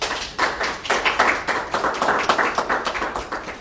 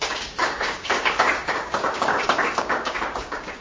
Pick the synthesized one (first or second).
second